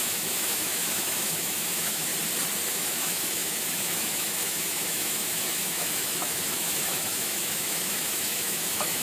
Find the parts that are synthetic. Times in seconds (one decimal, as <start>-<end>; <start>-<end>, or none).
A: 0.0-2.1; 2.7-9.0